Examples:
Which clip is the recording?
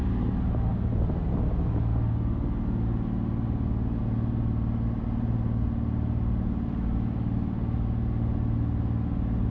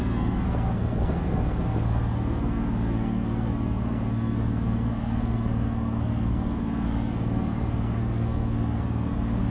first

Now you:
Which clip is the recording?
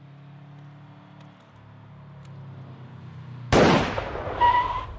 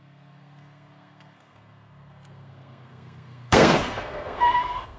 first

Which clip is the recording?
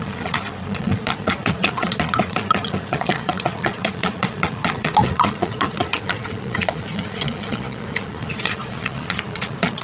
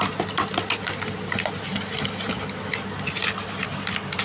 second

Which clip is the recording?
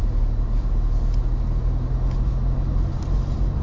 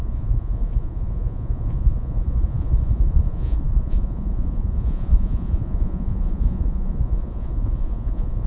first